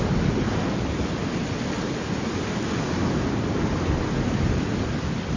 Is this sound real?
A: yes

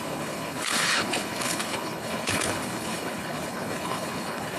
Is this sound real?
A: no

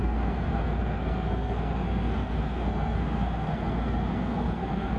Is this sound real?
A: no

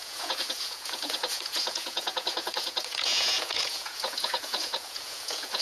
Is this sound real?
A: no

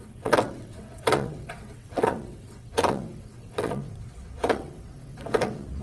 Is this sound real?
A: no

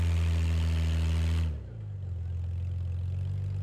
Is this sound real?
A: yes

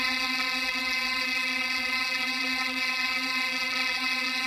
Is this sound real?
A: no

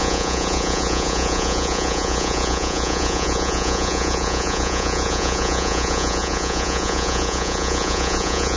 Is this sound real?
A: no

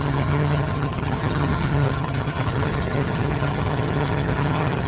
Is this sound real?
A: no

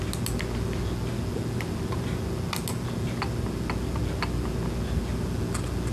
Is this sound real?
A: yes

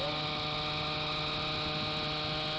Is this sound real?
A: yes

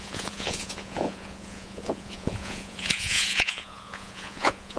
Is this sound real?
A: no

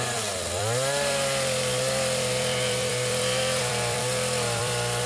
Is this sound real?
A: no